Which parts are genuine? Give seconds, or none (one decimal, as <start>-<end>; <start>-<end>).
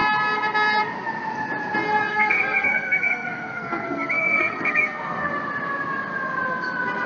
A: 0.0-2.1; 5.3-7.1